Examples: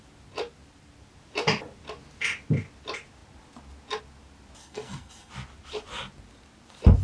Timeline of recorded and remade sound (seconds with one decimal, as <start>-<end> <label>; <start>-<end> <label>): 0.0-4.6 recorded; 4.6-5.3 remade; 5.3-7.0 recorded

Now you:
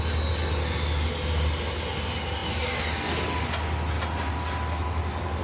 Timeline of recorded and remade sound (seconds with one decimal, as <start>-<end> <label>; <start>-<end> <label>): 0.0-5.4 recorded

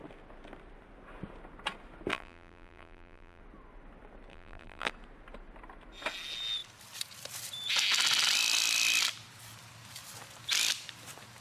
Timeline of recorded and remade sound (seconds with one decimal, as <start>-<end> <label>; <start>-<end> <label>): 0.0-2.1 recorded; 2.1-3.4 remade; 3.4-4.3 recorded; 4.3-4.9 remade; 4.9-11.4 recorded

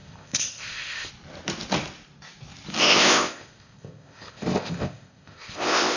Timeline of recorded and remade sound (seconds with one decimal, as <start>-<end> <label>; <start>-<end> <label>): 0.0-1.1 remade; 1.1-2.8 recorded; 2.8-6.0 remade